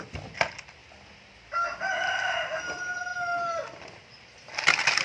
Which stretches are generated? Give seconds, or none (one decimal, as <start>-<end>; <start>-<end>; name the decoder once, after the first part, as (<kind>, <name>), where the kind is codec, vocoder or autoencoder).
none